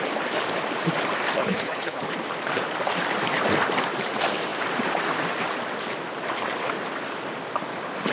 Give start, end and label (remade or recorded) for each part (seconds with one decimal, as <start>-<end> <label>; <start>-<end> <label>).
0.0-1.4 recorded; 1.4-2.0 remade; 2.0-8.1 recorded